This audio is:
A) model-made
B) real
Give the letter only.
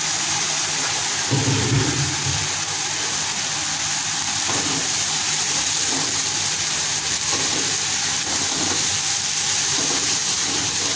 B